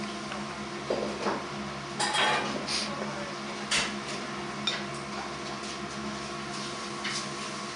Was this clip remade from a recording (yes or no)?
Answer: no